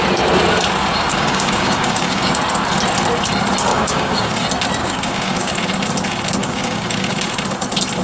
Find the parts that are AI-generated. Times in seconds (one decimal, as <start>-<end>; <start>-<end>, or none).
1.1-2.4; 3.7-4.3; 4.8-5.5; 6.4-7.1